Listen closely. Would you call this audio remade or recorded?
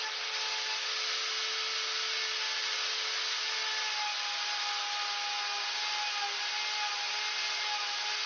recorded